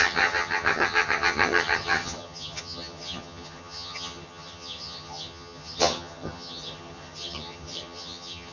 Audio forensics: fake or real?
fake